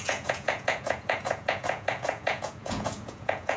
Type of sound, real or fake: fake